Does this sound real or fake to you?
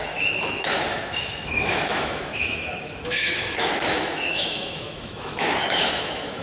fake